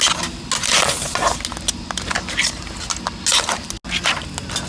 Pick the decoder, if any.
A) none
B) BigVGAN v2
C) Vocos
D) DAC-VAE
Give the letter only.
A